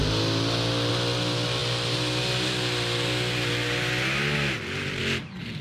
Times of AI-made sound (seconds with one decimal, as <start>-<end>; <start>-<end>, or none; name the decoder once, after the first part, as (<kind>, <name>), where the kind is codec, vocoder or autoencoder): none

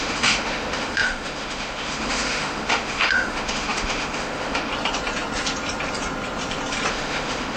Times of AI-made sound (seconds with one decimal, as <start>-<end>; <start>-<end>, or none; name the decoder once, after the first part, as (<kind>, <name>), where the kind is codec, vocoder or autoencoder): 0.0-4.7 (autoencoder, DAC-VAE); 6.9-7.6

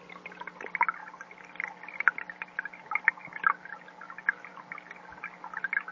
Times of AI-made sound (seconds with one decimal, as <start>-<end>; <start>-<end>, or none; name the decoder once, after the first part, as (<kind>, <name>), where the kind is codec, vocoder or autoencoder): none

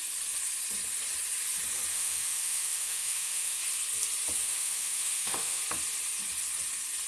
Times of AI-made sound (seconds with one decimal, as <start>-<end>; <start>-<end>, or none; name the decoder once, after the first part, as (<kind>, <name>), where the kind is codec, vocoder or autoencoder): 1.9-3.6 (autoencoder, DAC-VAE); 4.4-5.6